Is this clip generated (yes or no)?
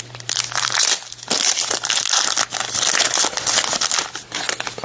no